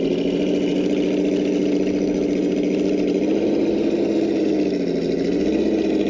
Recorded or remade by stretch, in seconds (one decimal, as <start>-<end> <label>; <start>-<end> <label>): 0.0-6.1 recorded